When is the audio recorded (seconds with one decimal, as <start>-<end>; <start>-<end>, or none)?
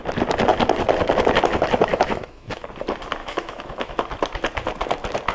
0.0-1.9; 2.7-3.2; 3.9-5.3